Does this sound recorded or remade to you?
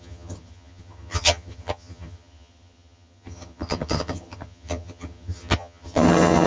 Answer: remade